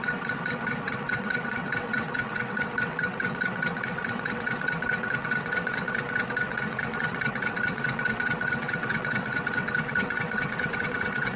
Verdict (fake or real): fake